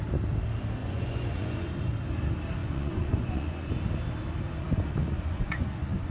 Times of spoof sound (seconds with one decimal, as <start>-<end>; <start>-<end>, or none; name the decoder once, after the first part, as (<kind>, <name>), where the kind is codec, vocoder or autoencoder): 0.8-1.9 (vocoder, Vocos); 2.6-3.7; 4.6-6.1